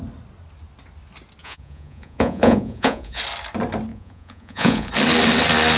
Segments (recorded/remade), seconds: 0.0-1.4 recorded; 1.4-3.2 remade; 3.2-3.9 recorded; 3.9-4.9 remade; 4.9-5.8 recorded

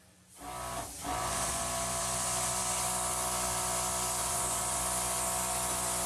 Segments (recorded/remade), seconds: 0.0-1.0 recorded; 1.0-1.6 remade; 1.6-4.2 recorded; 4.2-4.8 remade; 4.8-6.1 recorded

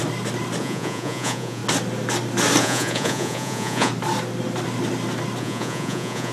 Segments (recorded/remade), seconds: 0.0-0.6 recorded; 0.6-1.6 remade; 1.6-2.6 recorded; 2.6-3.9 remade; 3.9-5.4 recorded; 5.4-6.3 remade

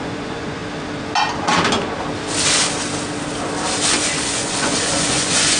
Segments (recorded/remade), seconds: 0.0-0.6 remade; 0.6-4.0 recorded; 4.0-5.6 remade

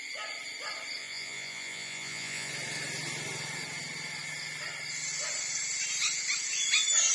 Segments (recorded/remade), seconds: 0.0-1.0 recorded; 1.0-2.5 remade; 2.5-7.1 recorded

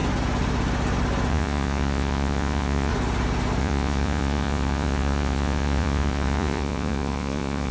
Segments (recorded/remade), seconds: 0.0-1.3 recorded; 1.3-2.9 remade; 2.9-3.6 recorded; 3.6-7.7 remade

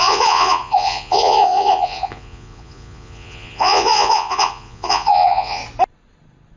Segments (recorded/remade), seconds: 0.0-5.6 remade; 5.6-6.6 recorded